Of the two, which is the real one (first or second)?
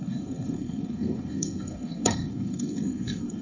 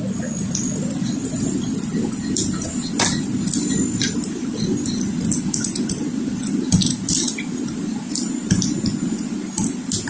second